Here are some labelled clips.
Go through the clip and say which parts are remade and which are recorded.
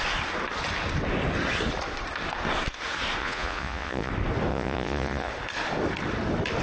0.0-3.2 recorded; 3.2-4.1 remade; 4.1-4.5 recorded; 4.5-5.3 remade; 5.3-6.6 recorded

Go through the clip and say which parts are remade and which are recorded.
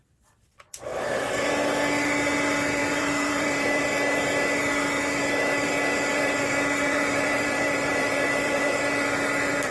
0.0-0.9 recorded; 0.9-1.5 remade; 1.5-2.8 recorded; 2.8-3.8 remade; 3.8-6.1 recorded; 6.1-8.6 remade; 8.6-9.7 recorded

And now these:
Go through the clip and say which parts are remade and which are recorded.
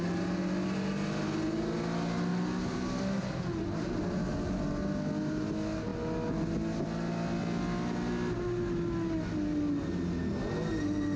0.0-11.2 recorded